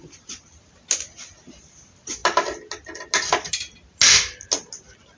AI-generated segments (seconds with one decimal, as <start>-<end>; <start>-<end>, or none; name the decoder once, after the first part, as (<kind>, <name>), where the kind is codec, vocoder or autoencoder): none